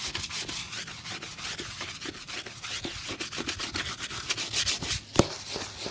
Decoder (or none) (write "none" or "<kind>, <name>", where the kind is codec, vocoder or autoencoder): none